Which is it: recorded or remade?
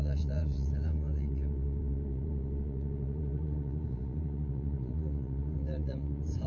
remade